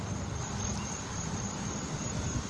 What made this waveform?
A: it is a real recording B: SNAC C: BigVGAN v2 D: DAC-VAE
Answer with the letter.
C